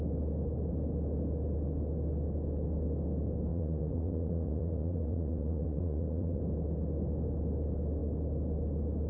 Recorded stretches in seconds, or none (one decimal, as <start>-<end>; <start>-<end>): 0.0-3.5; 6.4-9.1

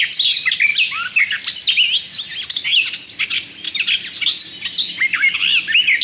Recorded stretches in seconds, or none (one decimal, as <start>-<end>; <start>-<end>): 0.0-6.0

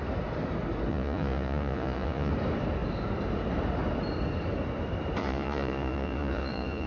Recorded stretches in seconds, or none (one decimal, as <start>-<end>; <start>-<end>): 0.0-0.9; 2.3-5.2

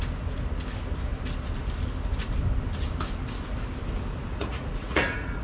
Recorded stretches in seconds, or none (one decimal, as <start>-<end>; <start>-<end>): 0.0-4.3

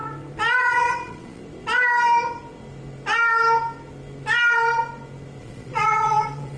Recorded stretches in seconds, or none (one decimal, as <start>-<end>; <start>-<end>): 0.0-0.6; 1.4-5.4

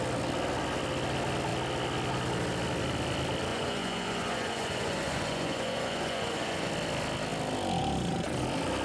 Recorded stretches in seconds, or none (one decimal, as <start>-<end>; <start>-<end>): 0.0-3.5; 6.7-8.8